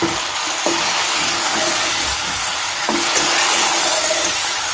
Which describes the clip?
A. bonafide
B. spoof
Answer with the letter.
B